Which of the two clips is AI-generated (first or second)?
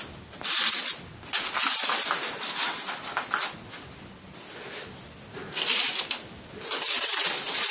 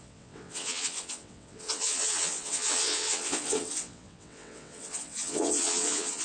second